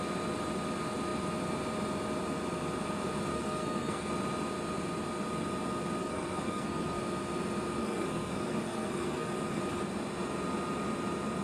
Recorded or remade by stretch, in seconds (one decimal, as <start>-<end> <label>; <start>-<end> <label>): 0.0-3.3 recorded; 3.3-4.1 remade; 4.1-6.0 recorded; 6.0-7.0 remade; 7.0-7.8 recorded; 7.8-9.6 remade; 9.6-11.4 recorded